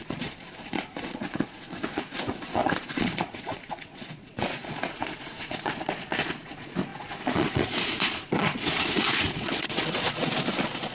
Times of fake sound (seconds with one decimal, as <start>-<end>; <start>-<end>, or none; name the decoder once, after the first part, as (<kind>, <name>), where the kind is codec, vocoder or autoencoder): 0.0-10.9 (vocoder, Vocos)